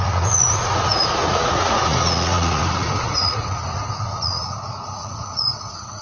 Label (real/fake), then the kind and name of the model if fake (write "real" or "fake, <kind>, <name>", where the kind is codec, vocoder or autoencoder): fake, vocoder, Vocos